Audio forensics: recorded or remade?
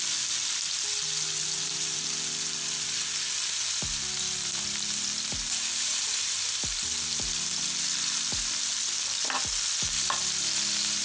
recorded